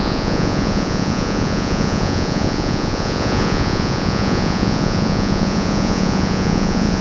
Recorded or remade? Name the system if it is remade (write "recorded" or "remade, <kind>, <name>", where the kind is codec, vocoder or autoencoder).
remade, vocoder, Vocos